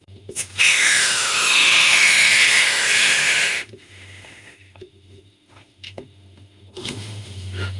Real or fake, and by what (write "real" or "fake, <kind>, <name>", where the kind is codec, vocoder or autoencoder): fake, autoencoder, DAC-VAE